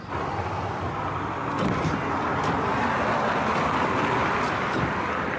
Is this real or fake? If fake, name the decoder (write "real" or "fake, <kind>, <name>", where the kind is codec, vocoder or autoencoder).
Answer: real